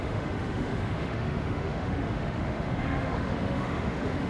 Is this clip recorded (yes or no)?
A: no